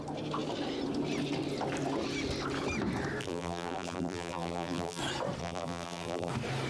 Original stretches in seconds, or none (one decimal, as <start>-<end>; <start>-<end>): 0.0-3.2; 5.0-5.4; 6.3-6.7